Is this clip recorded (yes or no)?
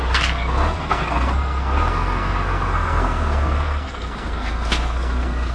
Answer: no